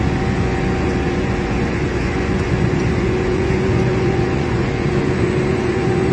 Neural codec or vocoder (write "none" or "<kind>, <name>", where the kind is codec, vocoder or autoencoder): vocoder, Vocos